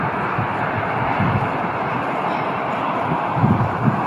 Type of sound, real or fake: real